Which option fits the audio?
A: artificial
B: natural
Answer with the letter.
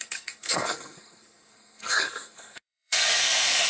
A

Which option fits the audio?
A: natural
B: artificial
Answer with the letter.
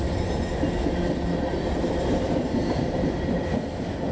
A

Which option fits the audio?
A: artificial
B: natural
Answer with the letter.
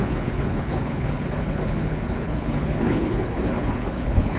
A